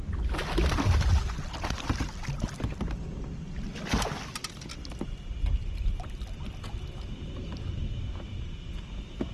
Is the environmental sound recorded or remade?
recorded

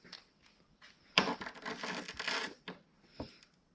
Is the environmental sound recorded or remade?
recorded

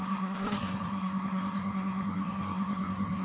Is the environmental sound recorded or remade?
remade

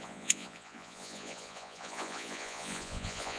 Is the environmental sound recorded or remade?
remade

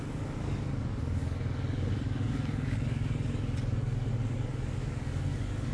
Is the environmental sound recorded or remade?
remade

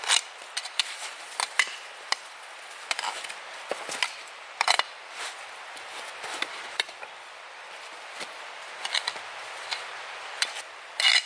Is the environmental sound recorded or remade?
remade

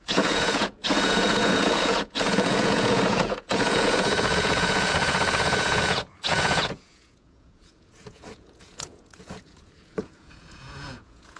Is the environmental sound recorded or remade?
remade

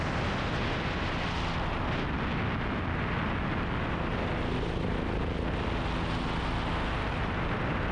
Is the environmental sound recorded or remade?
recorded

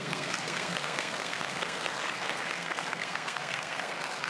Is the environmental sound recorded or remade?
remade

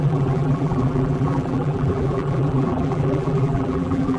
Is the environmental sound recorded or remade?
remade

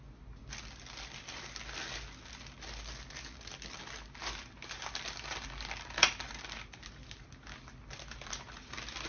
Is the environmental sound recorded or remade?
recorded